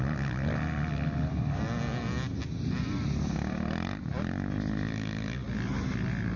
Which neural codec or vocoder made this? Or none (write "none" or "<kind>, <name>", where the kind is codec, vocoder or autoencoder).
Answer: none